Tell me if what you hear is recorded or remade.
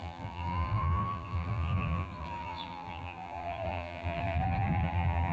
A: remade